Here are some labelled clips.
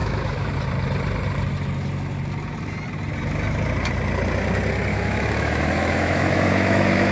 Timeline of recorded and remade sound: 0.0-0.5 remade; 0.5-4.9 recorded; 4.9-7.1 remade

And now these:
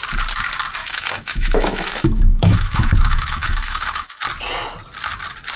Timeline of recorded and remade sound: 0.0-0.8 recorded; 0.8-4.2 remade; 4.2-5.6 recorded

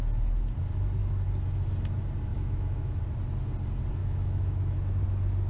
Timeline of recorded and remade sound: 0.0-2.3 recorded; 2.3-3.0 remade; 3.0-4.0 recorded; 4.0-4.9 remade; 4.9-5.5 recorded

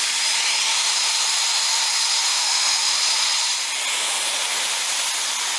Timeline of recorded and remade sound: 0.0-2.3 recorded; 2.3-3.0 remade; 3.0-5.6 recorded

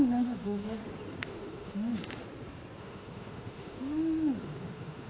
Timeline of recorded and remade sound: 0.0-0.8 remade; 0.8-1.3 recorded; 1.3-1.9 remade; 1.9-2.8 recorded; 2.8-5.1 remade

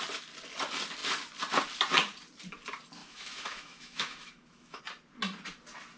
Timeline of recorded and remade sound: 0.0-3.0 recorded; 3.0-4.8 remade; 4.8-6.0 recorded